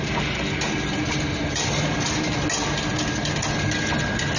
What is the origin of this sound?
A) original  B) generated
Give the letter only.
A